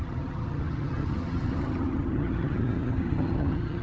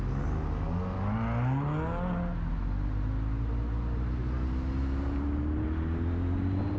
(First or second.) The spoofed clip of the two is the first